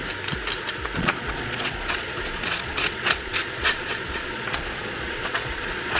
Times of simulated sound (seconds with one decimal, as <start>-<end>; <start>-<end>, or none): 1.0-6.0

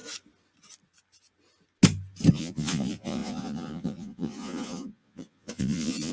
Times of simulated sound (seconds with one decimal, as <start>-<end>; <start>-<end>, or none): 2.3-6.1

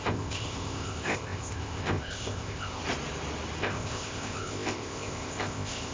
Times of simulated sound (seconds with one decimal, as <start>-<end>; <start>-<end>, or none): 0.0-2.8; 3.6-5.9

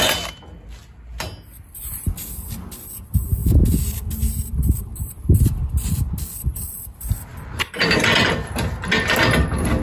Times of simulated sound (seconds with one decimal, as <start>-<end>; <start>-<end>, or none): 4.9-5.9; 7.3-7.9

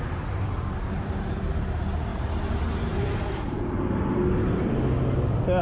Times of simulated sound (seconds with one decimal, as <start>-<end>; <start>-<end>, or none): none

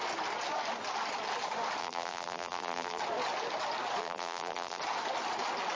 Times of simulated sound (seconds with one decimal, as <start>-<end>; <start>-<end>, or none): 1.8-3.0; 4.0-4.8

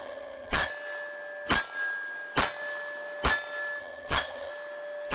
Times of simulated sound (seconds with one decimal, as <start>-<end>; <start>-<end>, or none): 0.0-0.7; 3.8-4.5

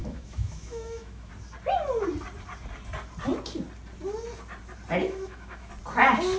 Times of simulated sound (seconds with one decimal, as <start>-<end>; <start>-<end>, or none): 0.0-1.3; 5.0-5.7